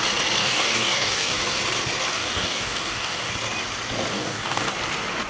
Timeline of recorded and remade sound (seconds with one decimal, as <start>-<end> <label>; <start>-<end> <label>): 0.0-0.4 recorded; 0.4-1.6 remade; 1.6-2.1 recorded; 2.1-3.3 remade; 3.3-4.1 recorded; 4.1-4.7 remade; 4.7-5.3 recorded